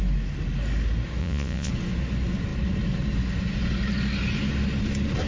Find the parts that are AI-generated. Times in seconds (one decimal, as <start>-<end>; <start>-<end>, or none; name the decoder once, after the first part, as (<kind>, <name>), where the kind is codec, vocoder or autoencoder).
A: 1.2-1.7 (vocoder, Vocos)

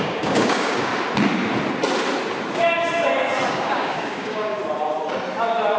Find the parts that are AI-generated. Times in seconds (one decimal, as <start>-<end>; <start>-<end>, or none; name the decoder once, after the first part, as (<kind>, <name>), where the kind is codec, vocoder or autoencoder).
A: 0.0-0.9 (codec, DAC); 3.5-4.6

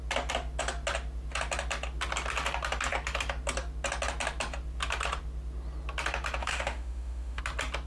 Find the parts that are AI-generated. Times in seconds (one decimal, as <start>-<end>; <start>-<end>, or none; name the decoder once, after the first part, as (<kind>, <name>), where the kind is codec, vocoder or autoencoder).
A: 6.4-7.4 (autoencoder, DAC-VAE)

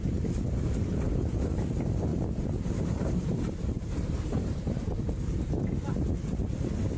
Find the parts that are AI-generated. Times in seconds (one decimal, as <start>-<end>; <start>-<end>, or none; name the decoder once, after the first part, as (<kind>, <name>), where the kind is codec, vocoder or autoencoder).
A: 2.1-5.0 (vocoder, BigVGAN v2)

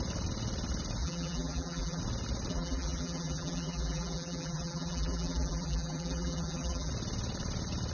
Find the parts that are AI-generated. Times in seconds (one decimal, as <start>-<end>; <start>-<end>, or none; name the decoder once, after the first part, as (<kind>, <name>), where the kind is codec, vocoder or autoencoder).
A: 1.0-2.0 (vocoder, BigVGAN v2); 2.5-6.9

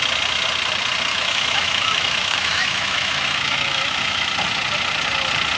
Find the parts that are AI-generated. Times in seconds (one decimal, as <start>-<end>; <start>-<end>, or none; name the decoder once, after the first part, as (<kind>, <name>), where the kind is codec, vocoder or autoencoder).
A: 1.1-4.3 (autoencoder, DAC-VAE)

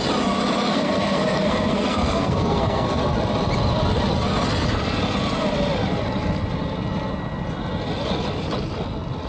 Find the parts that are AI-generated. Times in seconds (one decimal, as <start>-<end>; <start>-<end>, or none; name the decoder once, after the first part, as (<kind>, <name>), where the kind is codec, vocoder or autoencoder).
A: 0.7-3.0 (codec, SNAC)